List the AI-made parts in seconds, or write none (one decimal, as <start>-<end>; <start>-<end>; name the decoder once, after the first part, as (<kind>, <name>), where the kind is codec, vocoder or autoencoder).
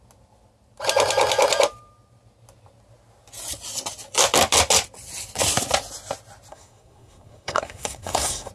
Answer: 6.5-8.5 (codec, SNAC)